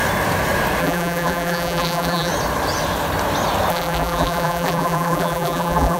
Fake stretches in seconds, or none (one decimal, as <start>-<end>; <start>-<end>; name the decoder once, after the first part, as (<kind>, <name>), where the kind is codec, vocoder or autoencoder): 0.8-2.3 (vocoder, BigVGAN v2); 3.7-6.0